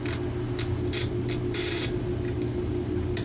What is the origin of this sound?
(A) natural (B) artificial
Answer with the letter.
A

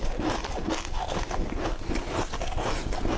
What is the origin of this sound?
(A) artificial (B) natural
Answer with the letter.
B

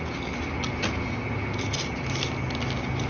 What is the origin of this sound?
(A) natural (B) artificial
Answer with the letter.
A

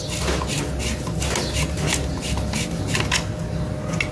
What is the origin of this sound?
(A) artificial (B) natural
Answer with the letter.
B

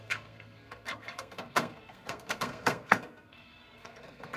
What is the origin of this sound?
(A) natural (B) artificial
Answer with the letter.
B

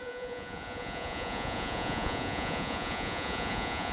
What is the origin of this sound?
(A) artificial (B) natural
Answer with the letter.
A